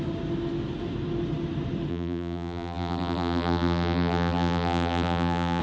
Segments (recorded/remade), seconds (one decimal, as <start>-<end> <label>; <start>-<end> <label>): 0.0-1.9 recorded; 1.9-5.6 remade